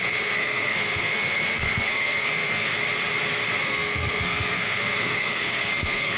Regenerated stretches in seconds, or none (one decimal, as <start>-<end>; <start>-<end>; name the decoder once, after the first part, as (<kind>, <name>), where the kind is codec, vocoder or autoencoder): 0.0-2.7 (codec, SNAC); 3.6-6.2